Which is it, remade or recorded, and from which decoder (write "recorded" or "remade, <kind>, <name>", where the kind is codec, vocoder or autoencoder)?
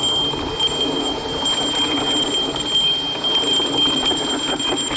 recorded